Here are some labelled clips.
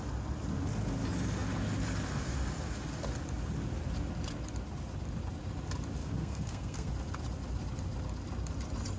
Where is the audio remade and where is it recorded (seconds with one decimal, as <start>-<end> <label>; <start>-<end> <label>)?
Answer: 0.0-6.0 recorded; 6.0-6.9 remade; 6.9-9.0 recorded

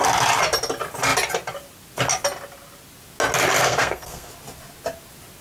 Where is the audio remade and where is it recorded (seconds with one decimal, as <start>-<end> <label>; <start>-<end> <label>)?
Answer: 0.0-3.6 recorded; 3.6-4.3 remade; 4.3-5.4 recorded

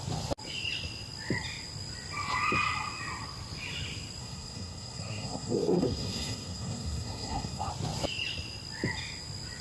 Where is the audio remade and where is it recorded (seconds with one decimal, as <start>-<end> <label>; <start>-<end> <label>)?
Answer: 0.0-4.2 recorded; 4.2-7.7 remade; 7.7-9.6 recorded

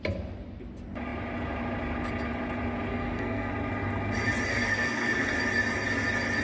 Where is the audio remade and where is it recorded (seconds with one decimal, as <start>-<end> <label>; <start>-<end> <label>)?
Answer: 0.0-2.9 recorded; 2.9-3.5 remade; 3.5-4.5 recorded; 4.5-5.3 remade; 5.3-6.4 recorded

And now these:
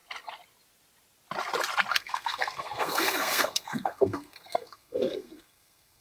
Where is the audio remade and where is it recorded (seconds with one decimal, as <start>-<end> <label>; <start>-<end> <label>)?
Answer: 0.0-1.9 recorded; 1.9-6.0 remade

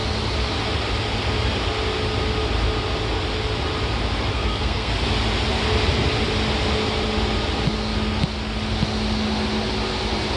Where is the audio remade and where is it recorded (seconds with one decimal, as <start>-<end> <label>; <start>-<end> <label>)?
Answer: 0.0-4.3 recorded; 4.3-4.9 remade; 4.9-10.4 recorded

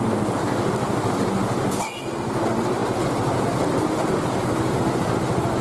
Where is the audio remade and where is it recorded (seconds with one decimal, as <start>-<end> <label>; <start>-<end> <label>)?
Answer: 0.0-5.6 recorded